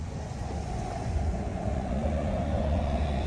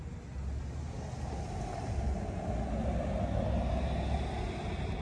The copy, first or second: first